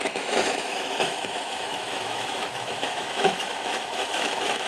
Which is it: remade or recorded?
remade